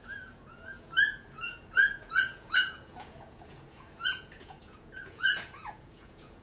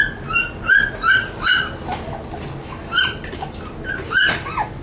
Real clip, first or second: second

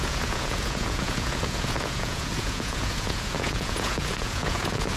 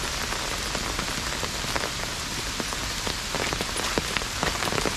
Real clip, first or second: second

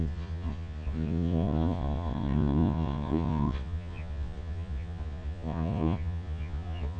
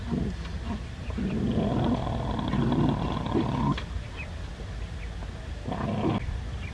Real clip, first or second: second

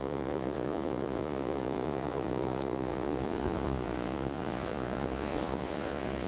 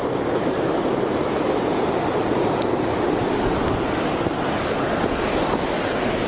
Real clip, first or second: second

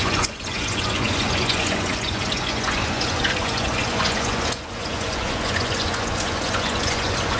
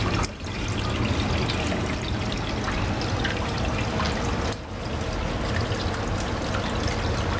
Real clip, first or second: second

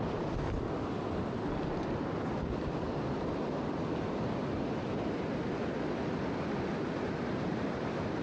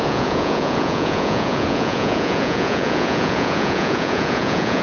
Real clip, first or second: first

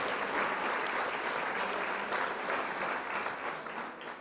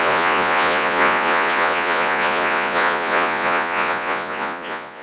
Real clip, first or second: first